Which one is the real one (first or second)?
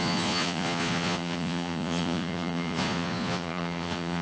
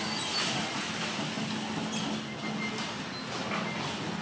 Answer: second